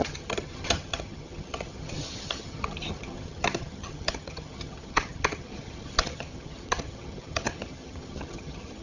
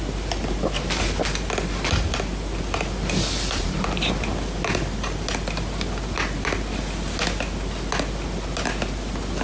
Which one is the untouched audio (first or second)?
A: second